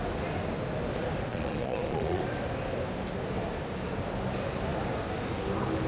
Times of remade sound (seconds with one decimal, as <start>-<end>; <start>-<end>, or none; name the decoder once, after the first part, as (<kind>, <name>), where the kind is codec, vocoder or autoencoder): 1.3-2.2 (vocoder, Vocos)